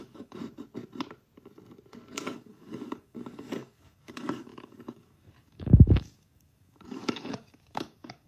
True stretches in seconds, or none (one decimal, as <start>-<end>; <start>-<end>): 0.4-2.1